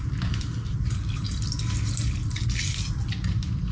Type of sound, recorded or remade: recorded